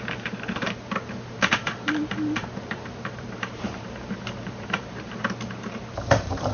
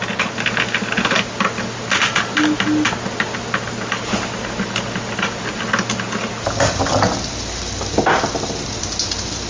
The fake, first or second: first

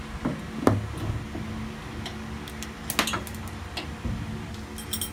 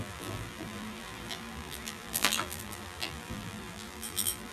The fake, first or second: second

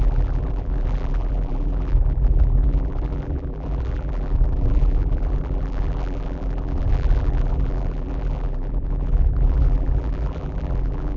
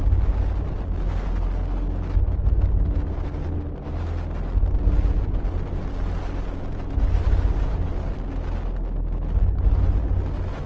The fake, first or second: first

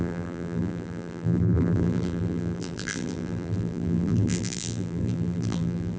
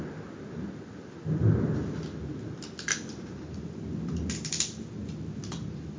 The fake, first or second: first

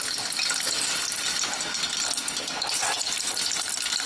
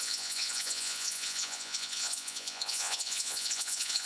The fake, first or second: second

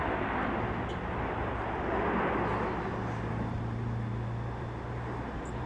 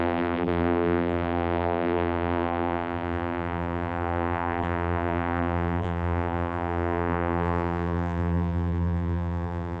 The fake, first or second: second